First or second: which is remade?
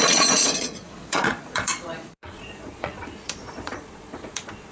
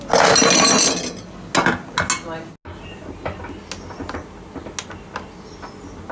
first